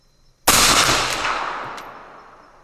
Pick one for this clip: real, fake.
real